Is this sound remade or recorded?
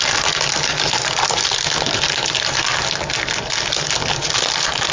recorded